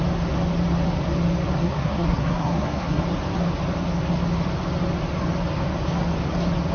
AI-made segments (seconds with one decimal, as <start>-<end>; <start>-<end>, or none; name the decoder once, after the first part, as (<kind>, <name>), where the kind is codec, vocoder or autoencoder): 1.6-3.0 (codec, SNAC)